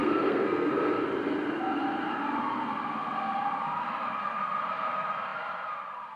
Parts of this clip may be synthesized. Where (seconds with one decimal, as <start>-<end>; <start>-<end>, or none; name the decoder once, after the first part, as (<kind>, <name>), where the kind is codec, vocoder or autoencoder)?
0.0-0.7 (codec, SNAC)